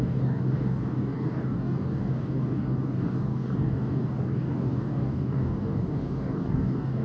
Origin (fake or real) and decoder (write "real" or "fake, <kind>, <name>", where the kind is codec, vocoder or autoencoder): fake, codec, DAC